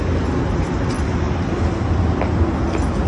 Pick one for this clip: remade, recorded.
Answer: recorded